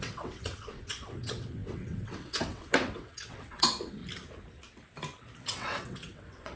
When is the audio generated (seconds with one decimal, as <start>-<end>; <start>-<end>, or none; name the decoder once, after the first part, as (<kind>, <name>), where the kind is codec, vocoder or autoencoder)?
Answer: 0.0-4.0 (vocoder, WaveNeXt); 5.4-6.6